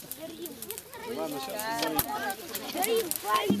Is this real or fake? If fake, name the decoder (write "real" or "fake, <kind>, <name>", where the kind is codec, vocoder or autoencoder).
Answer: real